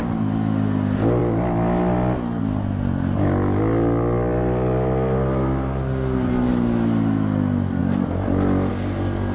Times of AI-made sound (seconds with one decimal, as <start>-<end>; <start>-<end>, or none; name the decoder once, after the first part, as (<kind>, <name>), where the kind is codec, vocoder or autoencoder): none